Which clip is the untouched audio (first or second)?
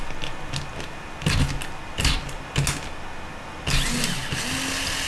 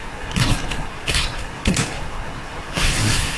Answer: first